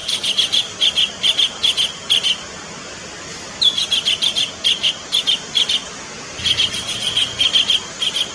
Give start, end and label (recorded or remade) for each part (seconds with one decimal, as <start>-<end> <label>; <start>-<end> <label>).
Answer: 0.0-8.3 recorded